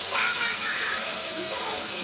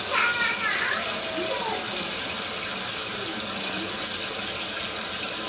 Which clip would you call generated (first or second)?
first